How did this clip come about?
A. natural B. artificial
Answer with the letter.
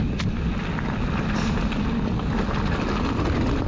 A